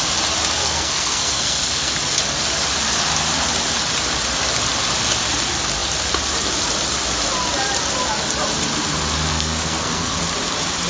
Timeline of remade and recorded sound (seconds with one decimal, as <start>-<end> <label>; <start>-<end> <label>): 0.0-0.6 recorded; 0.6-1.9 remade; 1.9-9.3 recorded; 9.3-10.2 remade; 10.2-10.9 recorded